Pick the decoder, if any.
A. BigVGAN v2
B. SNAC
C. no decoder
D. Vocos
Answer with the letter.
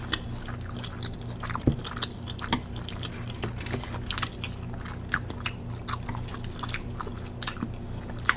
C